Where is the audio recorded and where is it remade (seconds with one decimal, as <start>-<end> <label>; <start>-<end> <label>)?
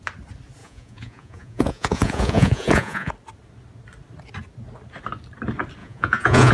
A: 0.0-0.6 recorded; 0.6-3.1 remade; 3.1-5.8 recorded; 5.8-6.5 remade